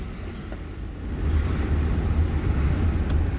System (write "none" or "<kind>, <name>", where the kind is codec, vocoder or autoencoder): none